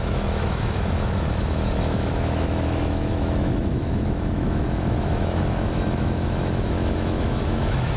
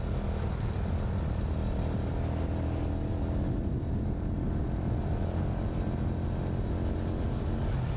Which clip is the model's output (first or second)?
first